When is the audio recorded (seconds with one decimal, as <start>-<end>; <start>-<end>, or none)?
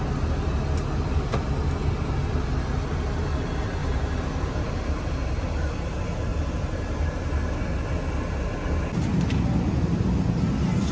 0.0-3.8; 4.9-6.3; 7.2-10.9